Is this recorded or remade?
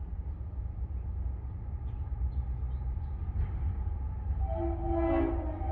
recorded